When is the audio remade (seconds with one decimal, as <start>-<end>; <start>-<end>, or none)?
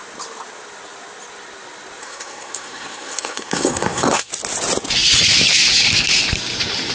2.0-4.3